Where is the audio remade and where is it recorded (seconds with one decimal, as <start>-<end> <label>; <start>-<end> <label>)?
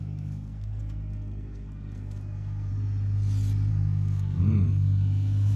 0.0-2.7 remade; 2.7-3.7 recorded; 3.7-5.6 remade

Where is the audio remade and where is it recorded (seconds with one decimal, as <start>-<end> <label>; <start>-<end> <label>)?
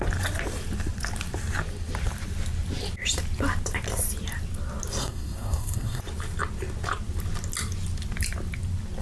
0.0-5.0 recorded; 5.0-6.0 remade; 6.0-9.0 recorded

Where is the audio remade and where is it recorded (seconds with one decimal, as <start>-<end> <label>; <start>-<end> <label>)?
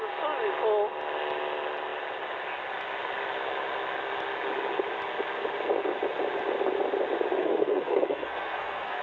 0.0-7.4 recorded; 7.4-9.0 remade